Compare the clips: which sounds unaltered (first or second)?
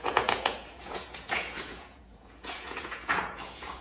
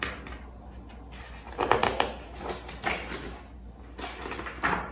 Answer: second